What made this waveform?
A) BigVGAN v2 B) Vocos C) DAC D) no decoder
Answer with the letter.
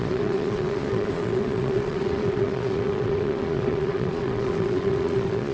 B